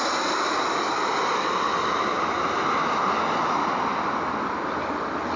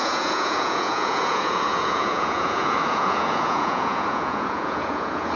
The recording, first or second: first